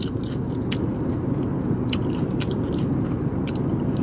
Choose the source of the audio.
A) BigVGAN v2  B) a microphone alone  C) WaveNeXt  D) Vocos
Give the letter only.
B